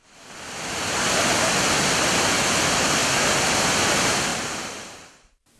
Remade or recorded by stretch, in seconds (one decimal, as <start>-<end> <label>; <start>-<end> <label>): 0.0-4.3 recorded; 4.3-5.6 remade